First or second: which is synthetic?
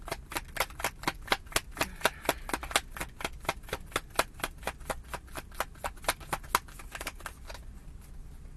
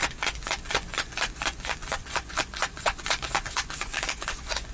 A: second